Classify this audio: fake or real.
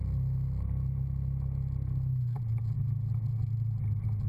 real